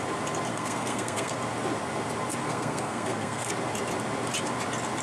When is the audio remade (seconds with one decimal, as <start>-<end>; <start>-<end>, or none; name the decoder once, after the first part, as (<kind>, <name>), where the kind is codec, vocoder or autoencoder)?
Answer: 0.5-1.4 (codec, SNAC); 2.4-3.5